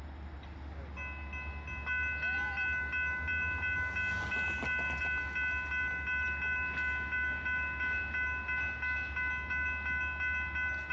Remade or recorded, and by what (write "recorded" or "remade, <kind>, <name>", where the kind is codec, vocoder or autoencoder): recorded